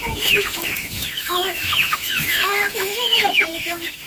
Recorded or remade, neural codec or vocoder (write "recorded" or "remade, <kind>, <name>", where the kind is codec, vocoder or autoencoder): remade, autoencoder, DAC-VAE